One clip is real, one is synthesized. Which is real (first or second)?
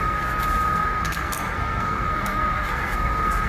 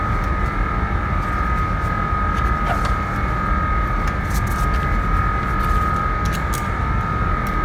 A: second